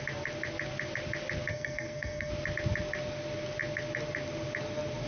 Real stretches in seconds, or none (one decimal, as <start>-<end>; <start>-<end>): 0.0-1.5; 2.3-5.1